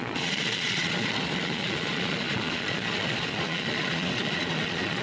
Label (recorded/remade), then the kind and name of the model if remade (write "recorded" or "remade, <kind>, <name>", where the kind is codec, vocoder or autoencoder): remade, vocoder, Vocos